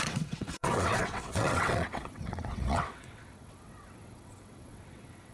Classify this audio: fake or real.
fake